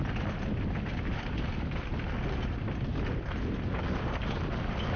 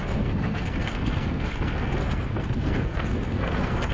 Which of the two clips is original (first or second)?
first